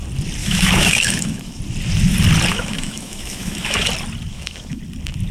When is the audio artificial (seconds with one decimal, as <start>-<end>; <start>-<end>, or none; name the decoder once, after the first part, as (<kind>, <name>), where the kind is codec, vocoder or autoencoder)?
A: 0.4-1.6 (autoencoder, DAC-VAE); 2.5-3.9; 4.3-4.8